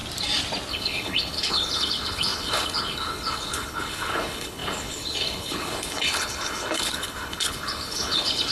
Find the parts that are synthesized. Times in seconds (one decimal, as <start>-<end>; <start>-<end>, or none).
0.7-8.5